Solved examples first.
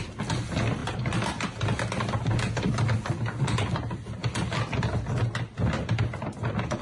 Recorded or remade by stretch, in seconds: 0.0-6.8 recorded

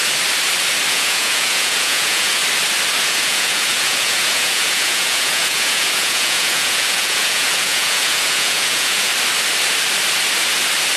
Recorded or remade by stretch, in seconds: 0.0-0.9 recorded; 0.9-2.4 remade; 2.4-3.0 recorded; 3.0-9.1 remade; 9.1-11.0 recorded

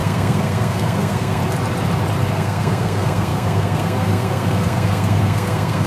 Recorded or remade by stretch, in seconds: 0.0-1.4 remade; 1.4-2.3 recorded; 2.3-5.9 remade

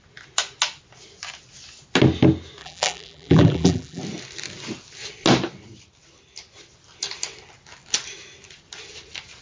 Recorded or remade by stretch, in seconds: 0.0-2.6 recorded; 2.6-4.0 remade; 4.0-9.4 recorded